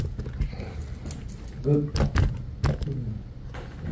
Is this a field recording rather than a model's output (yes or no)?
yes